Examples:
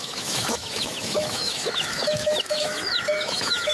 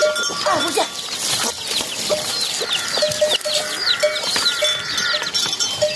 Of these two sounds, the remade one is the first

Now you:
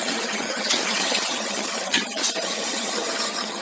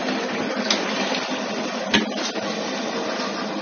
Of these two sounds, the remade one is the first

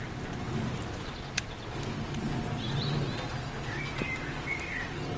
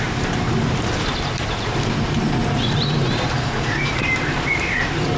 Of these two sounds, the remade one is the second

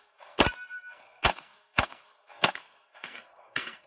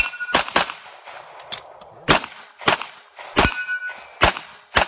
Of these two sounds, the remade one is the first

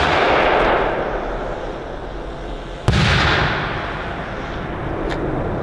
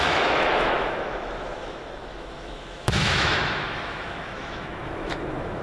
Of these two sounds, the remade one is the second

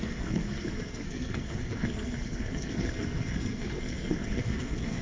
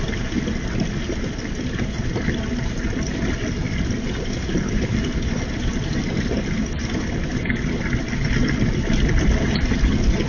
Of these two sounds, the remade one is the first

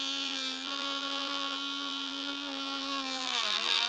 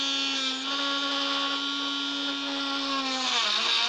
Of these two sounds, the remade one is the first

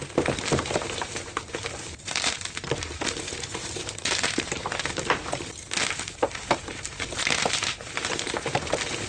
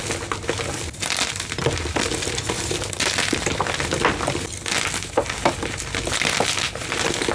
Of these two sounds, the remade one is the first